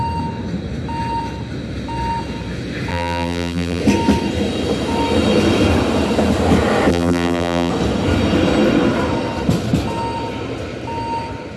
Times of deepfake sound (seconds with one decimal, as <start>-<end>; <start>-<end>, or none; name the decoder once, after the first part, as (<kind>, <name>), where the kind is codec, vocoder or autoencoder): 2.9-3.8 (vocoder, BigVGAN v2); 6.9-7.7